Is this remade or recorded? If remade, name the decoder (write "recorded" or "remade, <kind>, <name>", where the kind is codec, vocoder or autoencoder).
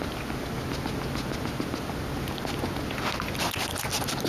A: recorded